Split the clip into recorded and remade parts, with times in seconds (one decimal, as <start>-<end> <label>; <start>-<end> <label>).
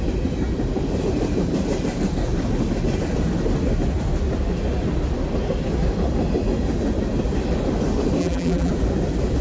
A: 0.0-8.2 recorded; 8.2-8.7 remade; 8.7-9.4 recorded